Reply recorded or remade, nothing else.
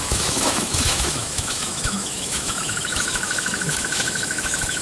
remade